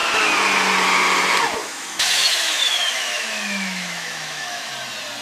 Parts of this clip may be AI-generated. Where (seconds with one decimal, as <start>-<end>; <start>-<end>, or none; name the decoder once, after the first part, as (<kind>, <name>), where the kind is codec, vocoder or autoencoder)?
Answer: 1.6-4.7 (autoencoder, DAC-VAE)